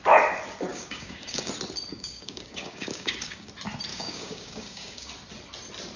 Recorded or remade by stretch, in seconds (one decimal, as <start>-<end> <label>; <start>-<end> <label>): 0.0-0.7 recorded; 0.7-1.5 remade; 1.5-1.9 recorded; 1.9-3.5 remade; 3.5-3.9 recorded; 3.9-5.1 remade; 5.1-6.0 recorded